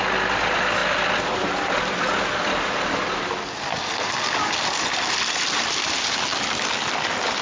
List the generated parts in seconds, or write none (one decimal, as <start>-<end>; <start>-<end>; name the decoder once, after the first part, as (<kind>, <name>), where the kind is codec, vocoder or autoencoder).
none